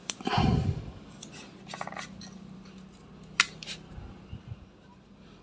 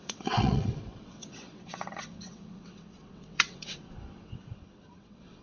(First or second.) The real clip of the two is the first